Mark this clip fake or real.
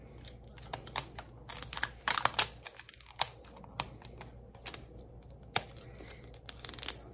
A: real